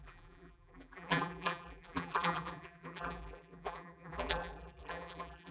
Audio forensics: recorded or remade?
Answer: remade